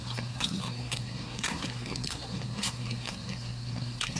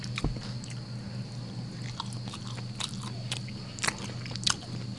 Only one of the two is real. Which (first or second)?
second